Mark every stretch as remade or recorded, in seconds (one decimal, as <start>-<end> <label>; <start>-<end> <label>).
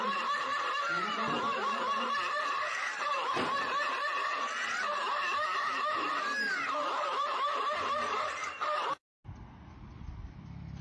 0.0-10.8 remade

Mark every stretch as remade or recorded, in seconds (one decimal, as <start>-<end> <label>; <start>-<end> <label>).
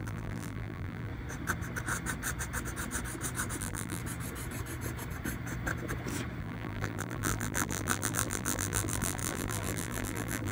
0.0-1.1 remade; 1.1-3.6 recorded; 3.6-4.0 remade; 4.0-6.4 recorded; 6.4-10.5 remade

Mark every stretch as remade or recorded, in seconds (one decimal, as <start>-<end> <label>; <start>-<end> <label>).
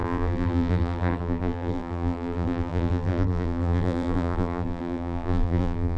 0.0-6.0 remade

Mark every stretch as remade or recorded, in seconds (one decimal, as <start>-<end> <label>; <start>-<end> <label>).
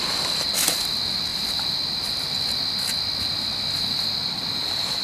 0.0-1.3 recorded; 1.3-2.6 remade; 2.6-5.0 recorded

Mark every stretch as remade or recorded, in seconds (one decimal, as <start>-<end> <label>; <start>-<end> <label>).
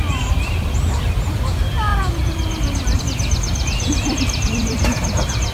0.0-5.5 remade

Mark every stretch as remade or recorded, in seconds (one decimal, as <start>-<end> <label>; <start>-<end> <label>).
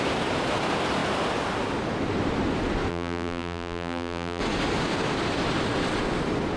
0.0-2.9 recorded; 2.9-4.4 remade; 4.4-6.6 recorded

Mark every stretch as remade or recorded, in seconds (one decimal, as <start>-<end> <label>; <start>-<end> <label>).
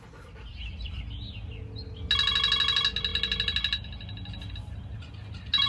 0.0-0.5 recorded; 0.5-1.6 remade; 1.6-5.7 recorded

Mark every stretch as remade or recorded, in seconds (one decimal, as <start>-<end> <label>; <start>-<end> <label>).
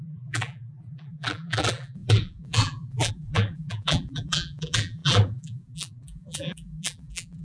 0.0-7.4 remade